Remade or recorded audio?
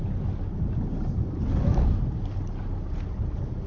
recorded